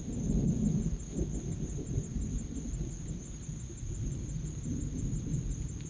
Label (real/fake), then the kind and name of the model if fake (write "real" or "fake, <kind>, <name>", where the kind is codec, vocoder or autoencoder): real